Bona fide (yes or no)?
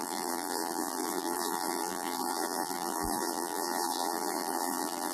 no